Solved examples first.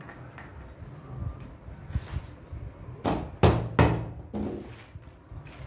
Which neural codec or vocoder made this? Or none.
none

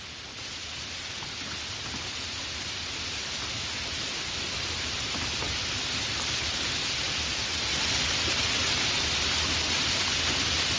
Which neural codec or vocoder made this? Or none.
none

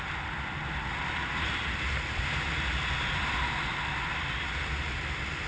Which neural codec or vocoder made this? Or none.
none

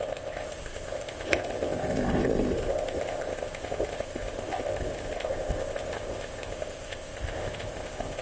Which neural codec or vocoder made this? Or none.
codec, ZipCodec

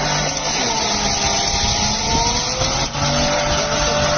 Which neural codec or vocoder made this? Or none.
none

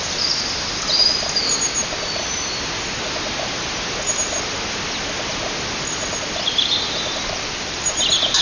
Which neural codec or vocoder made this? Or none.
none